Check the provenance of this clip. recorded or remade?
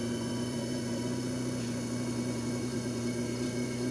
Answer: remade